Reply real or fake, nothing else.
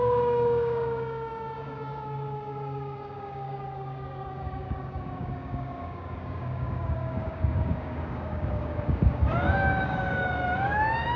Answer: fake